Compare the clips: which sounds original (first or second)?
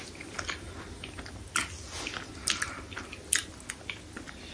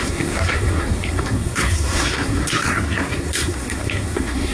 first